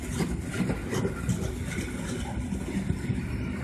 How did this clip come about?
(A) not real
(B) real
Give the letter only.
B